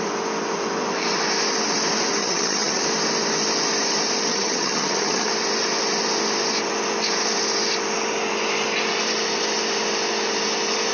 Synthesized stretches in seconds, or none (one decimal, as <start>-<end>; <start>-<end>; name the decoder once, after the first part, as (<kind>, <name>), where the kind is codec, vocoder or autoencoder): 2.2-2.8 (vocoder, HiFi-GAN); 4.3-5.3